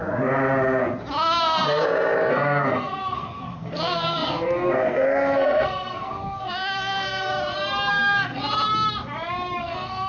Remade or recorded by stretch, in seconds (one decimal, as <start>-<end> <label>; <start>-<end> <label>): 0.0-2.3 recorded; 2.3-7.3 remade; 7.3-7.9 recorded; 7.9-8.4 remade; 8.4-9.6 recorded; 9.6-10.1 remade